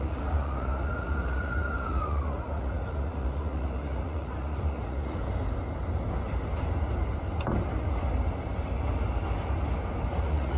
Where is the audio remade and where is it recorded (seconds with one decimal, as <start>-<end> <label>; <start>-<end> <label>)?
0.0-5.2 remade; 5.2-10.2 recorded; 10.2-10.6 remade

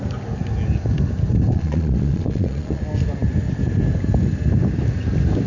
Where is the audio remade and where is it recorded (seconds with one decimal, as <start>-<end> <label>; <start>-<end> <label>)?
0.0-1.5 recorded; 1.5-2.8 remade; 2.8-5.5 recorded

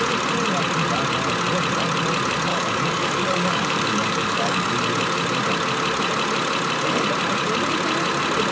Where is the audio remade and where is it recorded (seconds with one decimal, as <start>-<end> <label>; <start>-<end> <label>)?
0.0-2.5 recorded; 2.5-4.7 remade; 4.7-8.5 recorded

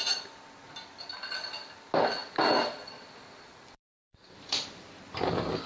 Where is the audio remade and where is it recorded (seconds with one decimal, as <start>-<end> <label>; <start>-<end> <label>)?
0.0-2.2 recorded; 2.2-4.4 remade; 4.4-5.7 recorded

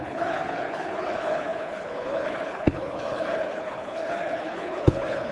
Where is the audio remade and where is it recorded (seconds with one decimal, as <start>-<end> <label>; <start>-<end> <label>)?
0.0-5.3 remade

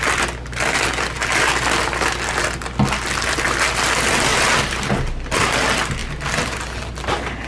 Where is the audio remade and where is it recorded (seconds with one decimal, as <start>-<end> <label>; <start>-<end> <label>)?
0.0-7.5 recorded

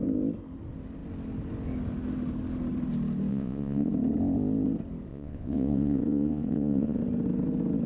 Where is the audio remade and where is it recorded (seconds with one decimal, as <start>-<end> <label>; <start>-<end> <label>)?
0.0-3.3 recorded; 3.3-3.9 remade; 3.9-5.1 recorded; 5.1-7.0 remade; 7.0-7.9 recorded

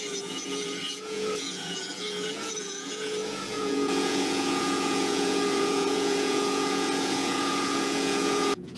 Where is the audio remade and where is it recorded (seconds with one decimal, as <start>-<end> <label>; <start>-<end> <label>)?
0.0-8.8 remade